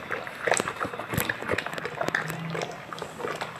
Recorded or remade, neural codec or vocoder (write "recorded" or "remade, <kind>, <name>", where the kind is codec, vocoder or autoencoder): recorded